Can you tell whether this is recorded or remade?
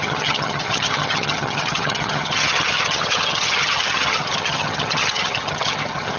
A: remade